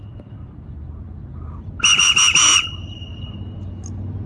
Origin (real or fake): real